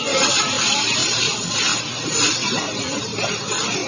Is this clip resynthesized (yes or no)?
no